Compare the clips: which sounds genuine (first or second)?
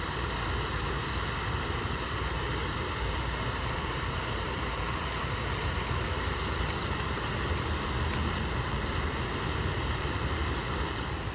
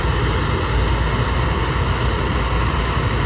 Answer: second